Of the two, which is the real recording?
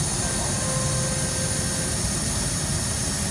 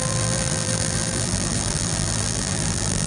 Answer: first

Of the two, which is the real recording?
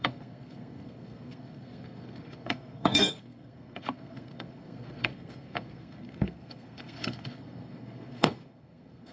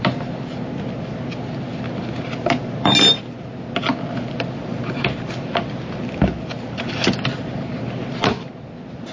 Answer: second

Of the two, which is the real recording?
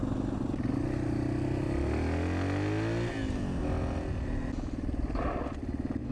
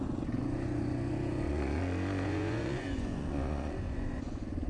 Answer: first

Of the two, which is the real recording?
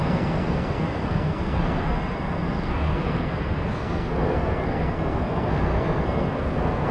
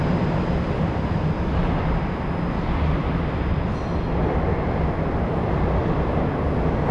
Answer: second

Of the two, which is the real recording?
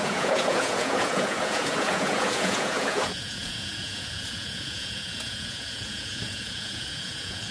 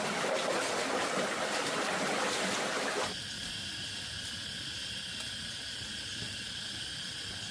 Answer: second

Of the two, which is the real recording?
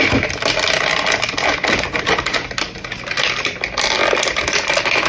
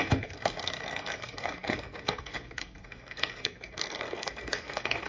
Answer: first